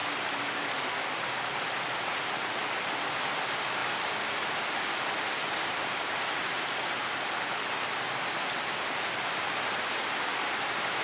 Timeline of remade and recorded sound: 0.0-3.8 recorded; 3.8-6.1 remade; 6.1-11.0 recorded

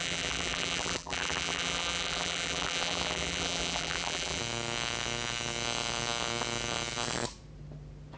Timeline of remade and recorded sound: 0.0-4.4 remade; 4.4-8.2 recorded

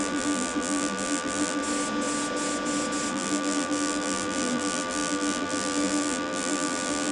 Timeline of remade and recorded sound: 0.0-1.6 remade; 1.6-3.1 recorded; 3.1-7.1 remade

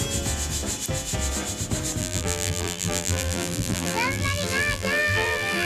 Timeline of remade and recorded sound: 0.0-2.0 recorded; 2.0-5.7 remade

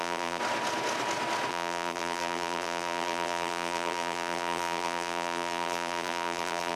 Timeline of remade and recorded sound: 0.0-0.4 remade; 0.4-1.5 recorded; 1.5-6.8 remade

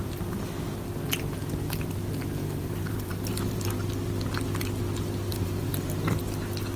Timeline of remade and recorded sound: 0.0-2.4 recorded; 2.4-3.7 remade; 3.7-5.3 recorded; 5.3-6.2 remade; 6.2-6.8 recorded

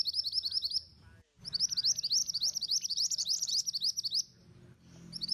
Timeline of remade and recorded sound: 0.0-2.2 recorded; 2.2-3.5 remade; 3.5-4.4 recorded; 4.4-5.3 remade

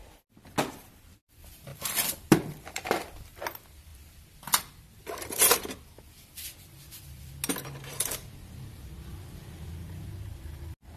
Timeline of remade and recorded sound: 0.0-1.7 recorded; 1.7-3.3 remade; 3.3-11.0 recorded